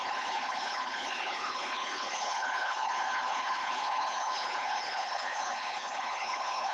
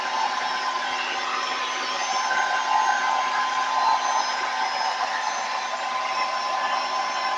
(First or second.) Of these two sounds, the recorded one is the second